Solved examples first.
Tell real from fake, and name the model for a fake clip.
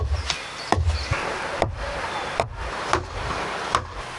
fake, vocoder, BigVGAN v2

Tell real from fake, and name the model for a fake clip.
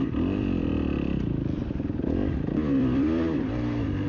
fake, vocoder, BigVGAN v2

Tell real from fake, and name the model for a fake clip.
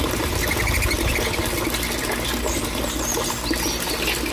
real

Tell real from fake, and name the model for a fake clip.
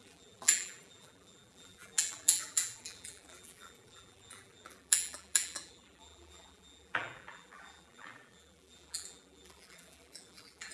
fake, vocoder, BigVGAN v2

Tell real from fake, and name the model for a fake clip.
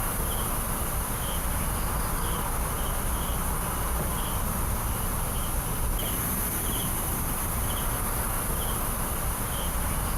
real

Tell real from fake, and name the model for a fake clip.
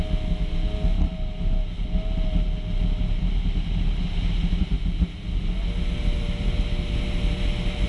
real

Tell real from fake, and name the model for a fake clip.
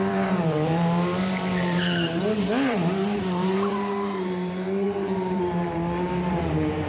fake, vocoder, BigVGAN v2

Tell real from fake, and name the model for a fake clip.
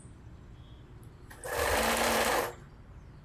real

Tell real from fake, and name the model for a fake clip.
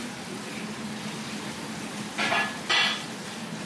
real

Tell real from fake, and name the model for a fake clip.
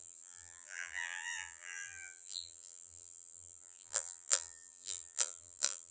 fake, vocoder, BigVGAN v2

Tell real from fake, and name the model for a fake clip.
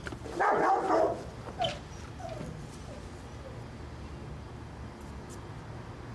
real